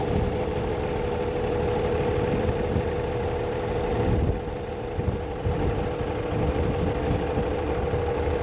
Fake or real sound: real